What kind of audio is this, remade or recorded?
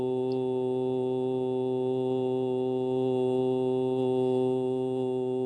recorded